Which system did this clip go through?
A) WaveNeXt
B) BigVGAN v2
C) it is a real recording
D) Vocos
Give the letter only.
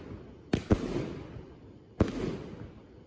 C